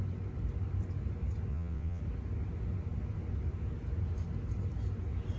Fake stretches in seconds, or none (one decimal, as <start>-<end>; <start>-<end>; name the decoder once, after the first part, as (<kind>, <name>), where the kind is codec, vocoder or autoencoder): 1.5-2.0 (vocoder, WaveNeXt)